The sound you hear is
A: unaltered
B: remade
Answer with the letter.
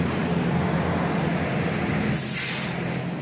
A